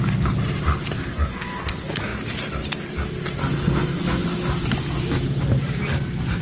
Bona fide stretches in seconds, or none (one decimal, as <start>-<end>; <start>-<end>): 0.0-1.1; 1.7-3.4; 4.0-6.4